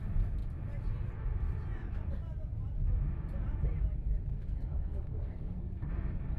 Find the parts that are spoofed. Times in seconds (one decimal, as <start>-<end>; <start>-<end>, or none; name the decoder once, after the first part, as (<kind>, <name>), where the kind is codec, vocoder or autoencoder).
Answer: 4.3-5.9 (codec, SNAC)